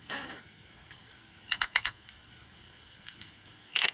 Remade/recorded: remade